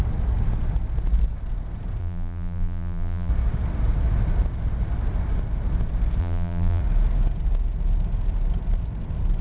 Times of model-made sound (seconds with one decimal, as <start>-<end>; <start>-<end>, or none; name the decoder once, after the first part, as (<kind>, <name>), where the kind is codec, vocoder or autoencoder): 2.0-3.3 (vocoder, BigVGAN v2); 6.2-6.8

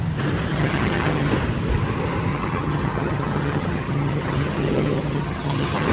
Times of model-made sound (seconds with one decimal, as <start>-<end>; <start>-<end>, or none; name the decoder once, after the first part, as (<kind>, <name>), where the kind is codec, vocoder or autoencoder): 0.5-1.3 (vocoder, HiFi-GAN); 2.3-5.9